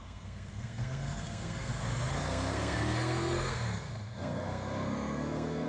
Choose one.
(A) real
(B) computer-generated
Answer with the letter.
B